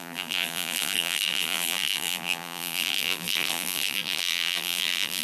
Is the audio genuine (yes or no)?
no